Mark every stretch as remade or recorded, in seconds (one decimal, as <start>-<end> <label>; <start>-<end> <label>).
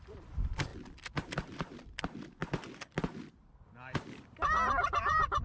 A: 0.0-0.7 remade; 0.7-3.3 recorded; 3.3-5.4 remade